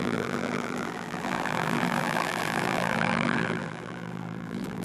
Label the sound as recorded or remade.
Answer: remade